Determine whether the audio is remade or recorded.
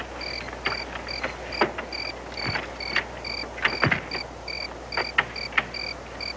recorded